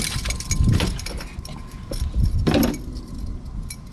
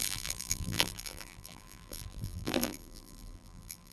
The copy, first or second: second